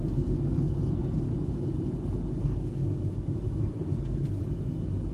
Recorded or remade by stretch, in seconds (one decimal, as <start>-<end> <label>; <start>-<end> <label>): 0.0-1.3 remade; 1.3-2.4 recorded; 2.4-4.4 remade; 4.4-5.1 recorded